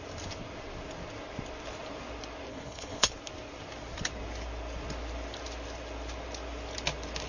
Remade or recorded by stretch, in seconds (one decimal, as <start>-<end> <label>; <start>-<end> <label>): 0.0-2.5 recorded; 2.5-3.1 remade; 3.1-7.3 recorded